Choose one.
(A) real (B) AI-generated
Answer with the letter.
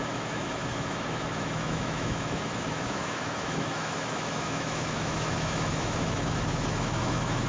B